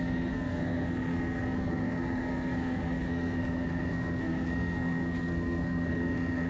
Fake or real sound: fake